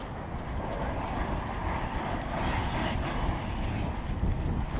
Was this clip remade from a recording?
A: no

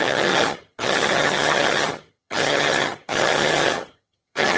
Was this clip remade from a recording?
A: yes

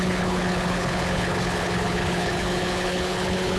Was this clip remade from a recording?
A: yes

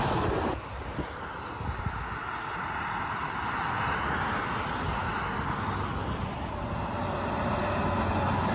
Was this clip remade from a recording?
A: no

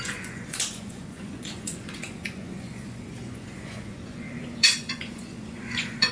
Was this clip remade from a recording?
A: yes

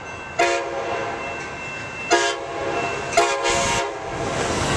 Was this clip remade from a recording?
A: no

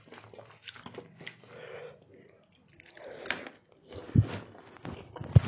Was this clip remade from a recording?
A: no